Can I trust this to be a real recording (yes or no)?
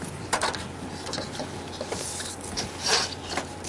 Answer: yes